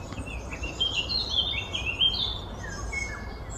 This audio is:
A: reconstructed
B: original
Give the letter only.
B